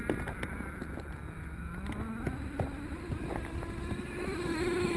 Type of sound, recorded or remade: recorded